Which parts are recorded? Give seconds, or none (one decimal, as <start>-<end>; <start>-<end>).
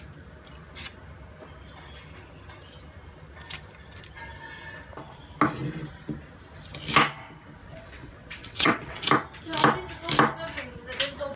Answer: 0.0-7.6; 9.1-11.4